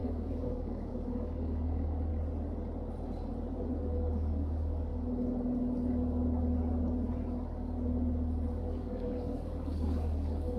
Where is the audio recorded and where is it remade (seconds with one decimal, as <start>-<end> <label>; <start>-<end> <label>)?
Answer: 0.0-2.1 remade; 2.1-3.7 recorded; 3.7-4.9 remade; 4.9-8.6 recorded; 8.6-10.6 remade

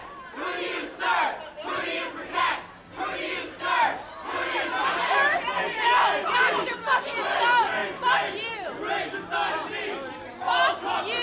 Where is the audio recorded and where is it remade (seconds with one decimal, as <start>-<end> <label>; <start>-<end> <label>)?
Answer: 0.0-11.2 recorded

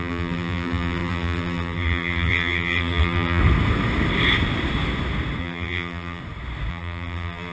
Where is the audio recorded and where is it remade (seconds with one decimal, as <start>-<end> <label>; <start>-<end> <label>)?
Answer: 0.0-3.4 remade; 3.4-5.4 recorded; 5.4-6.2 remade; 6.2-6.7 recorded; 6.7-7.5 remade